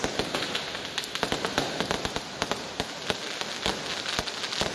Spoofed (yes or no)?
no